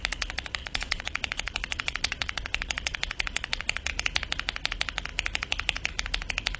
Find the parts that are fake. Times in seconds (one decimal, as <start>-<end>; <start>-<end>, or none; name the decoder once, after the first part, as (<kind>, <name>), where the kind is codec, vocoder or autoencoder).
0.6-3.9 (vocoder, WaveNeXt)